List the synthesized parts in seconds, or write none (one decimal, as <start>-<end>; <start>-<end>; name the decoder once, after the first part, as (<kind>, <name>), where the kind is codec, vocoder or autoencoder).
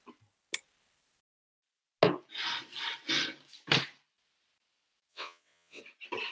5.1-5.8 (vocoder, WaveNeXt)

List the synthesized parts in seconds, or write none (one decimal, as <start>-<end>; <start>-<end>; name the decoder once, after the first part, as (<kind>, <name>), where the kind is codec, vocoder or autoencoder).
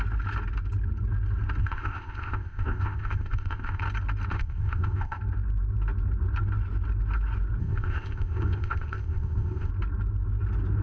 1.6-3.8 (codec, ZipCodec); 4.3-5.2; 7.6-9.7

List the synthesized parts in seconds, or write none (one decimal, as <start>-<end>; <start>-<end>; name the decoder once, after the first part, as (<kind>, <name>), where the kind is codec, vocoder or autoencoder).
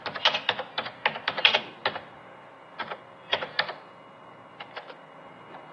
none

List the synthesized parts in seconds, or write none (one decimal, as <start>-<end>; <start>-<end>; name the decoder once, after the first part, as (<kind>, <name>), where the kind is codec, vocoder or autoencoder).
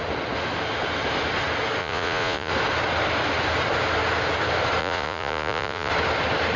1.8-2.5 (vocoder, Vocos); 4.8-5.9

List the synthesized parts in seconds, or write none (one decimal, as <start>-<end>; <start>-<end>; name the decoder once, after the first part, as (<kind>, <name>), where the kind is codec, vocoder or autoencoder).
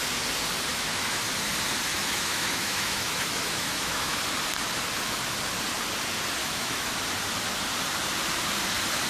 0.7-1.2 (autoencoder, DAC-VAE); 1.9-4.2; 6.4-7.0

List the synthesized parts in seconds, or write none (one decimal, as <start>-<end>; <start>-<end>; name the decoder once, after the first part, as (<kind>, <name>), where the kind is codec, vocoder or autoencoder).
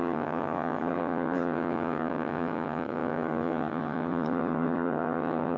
0.0-5.6 (vocoder, HiFi-GAN)